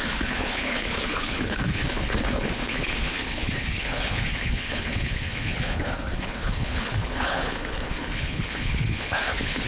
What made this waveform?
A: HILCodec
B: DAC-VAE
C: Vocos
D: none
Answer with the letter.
A